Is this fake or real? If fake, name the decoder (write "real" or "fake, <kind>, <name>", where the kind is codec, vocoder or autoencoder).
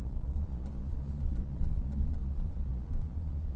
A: fake, vocoder, Vocos